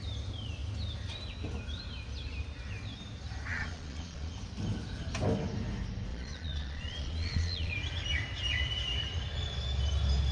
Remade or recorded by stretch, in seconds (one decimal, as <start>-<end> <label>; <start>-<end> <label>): 0.0-3.5 recorded; 3.5-4.3 remade; 4.3-6.1 recorded; 6.1-7.7 remade; 7.7-10.3 recorded